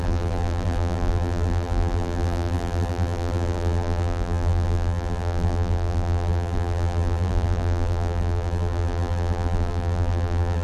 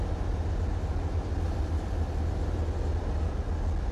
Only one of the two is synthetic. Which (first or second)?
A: first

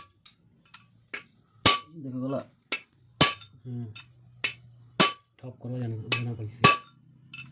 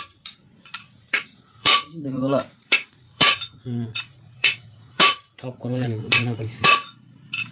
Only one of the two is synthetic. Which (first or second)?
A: second